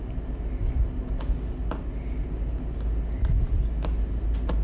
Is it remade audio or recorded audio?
recorded